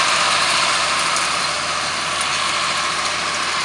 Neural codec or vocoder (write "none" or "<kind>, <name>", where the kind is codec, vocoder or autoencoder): vocoder, BigVGAN v2